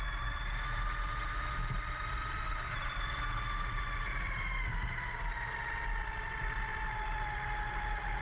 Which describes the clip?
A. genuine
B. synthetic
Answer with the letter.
A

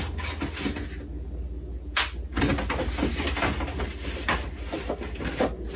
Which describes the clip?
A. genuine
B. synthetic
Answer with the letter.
A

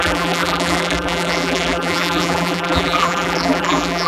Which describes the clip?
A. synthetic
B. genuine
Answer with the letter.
A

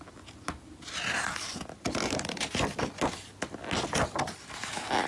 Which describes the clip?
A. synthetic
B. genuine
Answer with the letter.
B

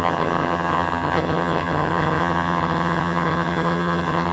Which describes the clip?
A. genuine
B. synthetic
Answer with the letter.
B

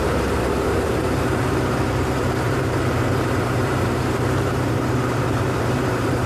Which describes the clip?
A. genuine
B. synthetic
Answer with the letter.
B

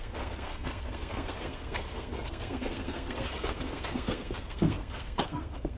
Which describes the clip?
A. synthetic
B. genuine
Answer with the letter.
A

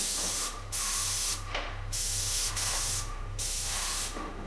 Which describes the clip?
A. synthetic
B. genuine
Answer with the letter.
A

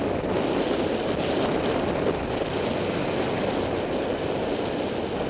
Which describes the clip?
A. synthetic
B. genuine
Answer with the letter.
B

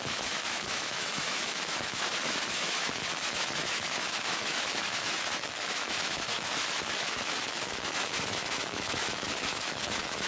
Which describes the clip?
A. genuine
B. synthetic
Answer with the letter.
B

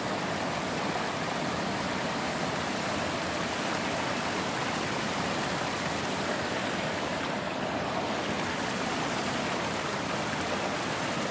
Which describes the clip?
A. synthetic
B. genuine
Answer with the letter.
B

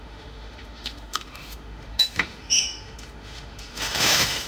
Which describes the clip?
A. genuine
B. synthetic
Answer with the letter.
B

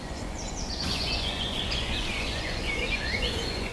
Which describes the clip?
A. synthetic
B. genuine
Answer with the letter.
A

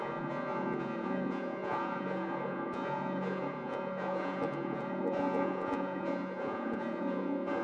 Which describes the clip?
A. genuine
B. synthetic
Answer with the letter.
B